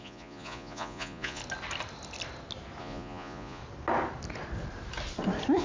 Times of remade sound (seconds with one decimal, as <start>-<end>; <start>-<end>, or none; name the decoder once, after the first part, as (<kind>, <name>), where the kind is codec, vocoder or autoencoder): 0.0-1.4 (vocoder, Vocos); 2.8-3.6